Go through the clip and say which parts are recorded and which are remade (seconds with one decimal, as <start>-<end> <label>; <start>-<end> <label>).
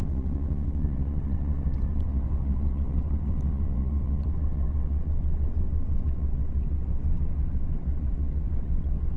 0.0-9.2 remade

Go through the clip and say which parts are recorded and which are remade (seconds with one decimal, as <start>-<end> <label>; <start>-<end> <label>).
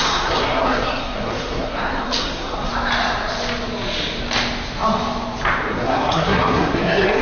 0.0-2.7 remade; 2.7-5.7 recorded; 5.7-7.2 remade